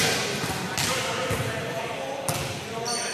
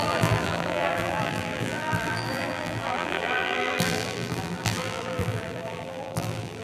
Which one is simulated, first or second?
second